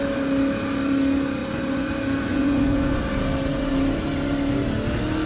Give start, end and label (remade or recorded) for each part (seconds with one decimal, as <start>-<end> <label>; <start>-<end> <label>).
0.0-1.4 recorded; 1.4-1.9 remade; 1.9-2.3 recorded; 2.3-3.0 remade; 3.0-5.3 recorded

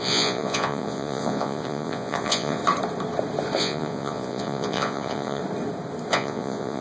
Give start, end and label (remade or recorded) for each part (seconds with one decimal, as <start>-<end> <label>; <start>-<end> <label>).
0.0-2.6 remade; 2.6-3.6 recorded; 3.6-5.4 remade; 5.4-6.1 recorded; 6.1-6.8 remade

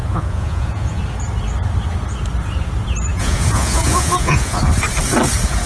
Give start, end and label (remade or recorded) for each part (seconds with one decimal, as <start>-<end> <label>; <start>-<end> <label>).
0.0-1.0 remade; 1.0-3.1 recorded; 3.1-4.6 remade; 4.6-5.7 recorded

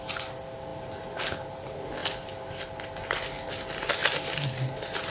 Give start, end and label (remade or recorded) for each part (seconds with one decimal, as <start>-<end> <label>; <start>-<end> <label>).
0.0-5.1 recorded

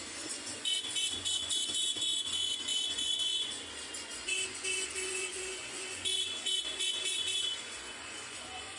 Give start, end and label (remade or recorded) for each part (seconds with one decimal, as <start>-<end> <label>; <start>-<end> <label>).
0.0-8.8 remade

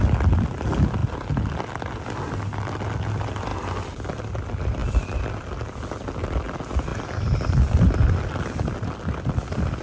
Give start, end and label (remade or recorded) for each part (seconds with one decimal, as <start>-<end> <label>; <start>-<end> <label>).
0.0-9.8 recorded

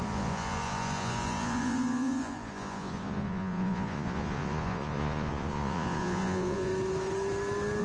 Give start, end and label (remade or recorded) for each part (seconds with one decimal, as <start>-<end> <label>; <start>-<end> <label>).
0.0-6.7 remade; 6.7-7.8 recorded

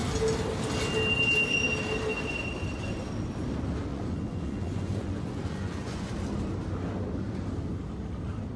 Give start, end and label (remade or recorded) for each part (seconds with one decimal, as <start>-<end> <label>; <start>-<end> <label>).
0.0-3.9 recorded; 3.9-6.1 remade; 6.1-8.6 recorded